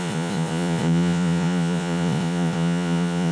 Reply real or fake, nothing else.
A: fake